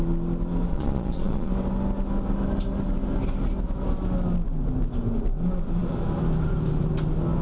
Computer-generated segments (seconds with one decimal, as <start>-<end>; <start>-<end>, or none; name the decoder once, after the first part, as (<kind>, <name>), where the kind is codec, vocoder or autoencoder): 0.7-1.5 (vocoder, Vocos)